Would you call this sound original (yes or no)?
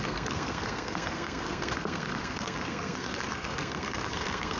no